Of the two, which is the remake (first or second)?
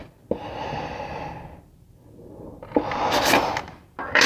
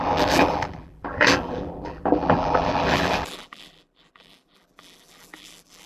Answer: second